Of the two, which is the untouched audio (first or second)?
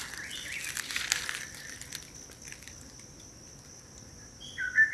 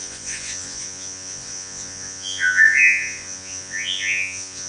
first